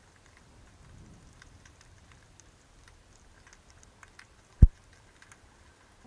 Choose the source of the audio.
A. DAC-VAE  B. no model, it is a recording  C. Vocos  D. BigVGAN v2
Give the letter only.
D